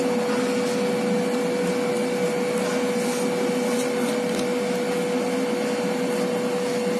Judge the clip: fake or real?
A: real